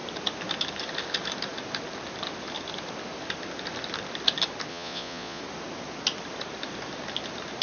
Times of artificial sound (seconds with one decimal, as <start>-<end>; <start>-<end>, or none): 4.7-5.4